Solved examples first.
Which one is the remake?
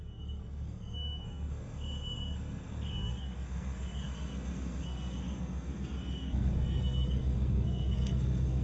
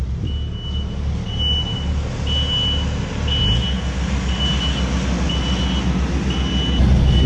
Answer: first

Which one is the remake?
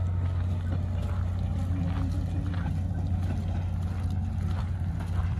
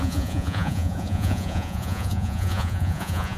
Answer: second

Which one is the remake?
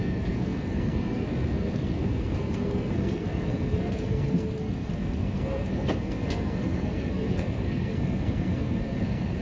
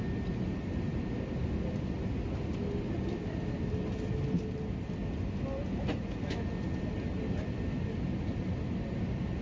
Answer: first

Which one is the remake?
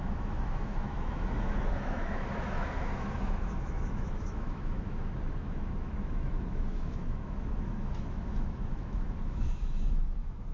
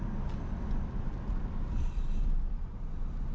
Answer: first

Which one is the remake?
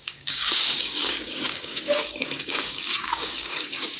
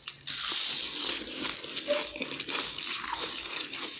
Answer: first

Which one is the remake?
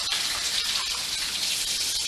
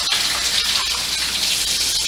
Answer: first